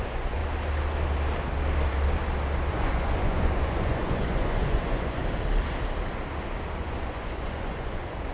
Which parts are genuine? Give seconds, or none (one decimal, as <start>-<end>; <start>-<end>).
0.4-2.7; 5.2-6.8